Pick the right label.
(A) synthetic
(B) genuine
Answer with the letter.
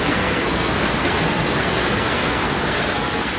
A